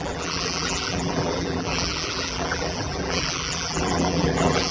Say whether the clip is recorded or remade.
remade